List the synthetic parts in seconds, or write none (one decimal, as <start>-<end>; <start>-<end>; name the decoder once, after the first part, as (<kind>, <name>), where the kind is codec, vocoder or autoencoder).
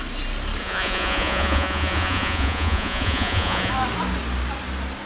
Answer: 0.6-3.7 (vocoder, Vocos)